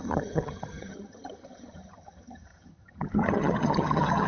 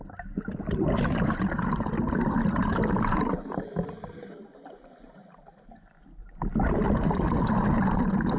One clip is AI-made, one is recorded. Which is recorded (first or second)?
second